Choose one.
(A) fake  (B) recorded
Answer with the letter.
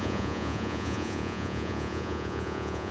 A